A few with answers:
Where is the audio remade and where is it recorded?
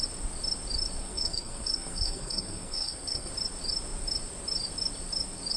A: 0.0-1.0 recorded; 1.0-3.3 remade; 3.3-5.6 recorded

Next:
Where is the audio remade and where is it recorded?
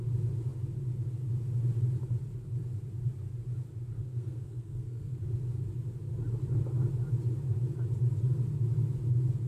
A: 0.0-4.0 recorded; 4.0-5.2 remade; 5.2-9.5 recorded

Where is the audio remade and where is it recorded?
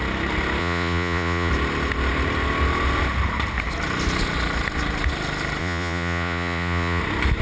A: 0.0-0.6 recorded; 0.6-1.5 remade; 1.5-5.6 recorded; 5.6-7.0 remade; 7.0-7.4 recorded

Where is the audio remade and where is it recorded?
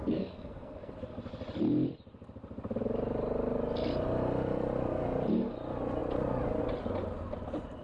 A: 0.0-0.9 remade; 0.9-7.8 recorded